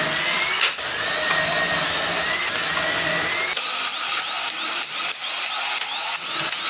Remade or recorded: recorded